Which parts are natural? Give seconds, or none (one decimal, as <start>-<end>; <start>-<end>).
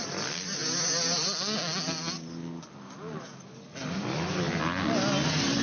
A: 0.0-5.6